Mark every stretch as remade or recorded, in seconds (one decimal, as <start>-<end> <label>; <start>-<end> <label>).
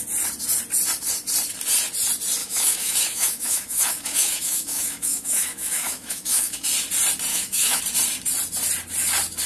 0.0-2.4 recorded; 2.4-6.7 remade; 6.7-7.3 recorded; 7.3-7.8 remade; 7.8-9.5 recorded